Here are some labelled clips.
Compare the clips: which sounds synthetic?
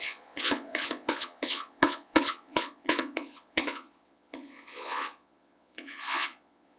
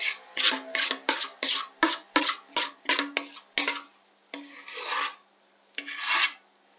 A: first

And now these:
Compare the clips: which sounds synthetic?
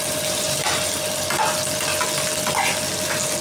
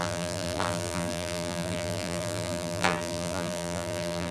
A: second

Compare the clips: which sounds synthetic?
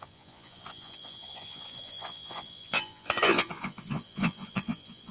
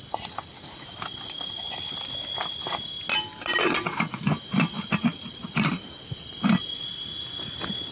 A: first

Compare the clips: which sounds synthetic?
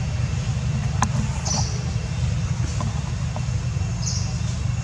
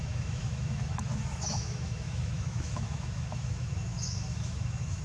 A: second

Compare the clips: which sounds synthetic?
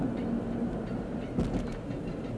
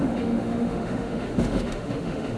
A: second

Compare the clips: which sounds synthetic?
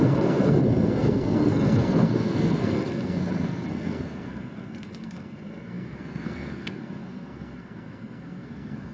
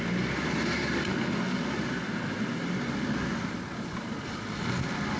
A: first